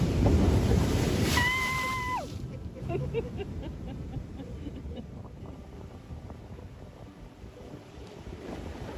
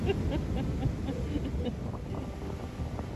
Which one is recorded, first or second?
second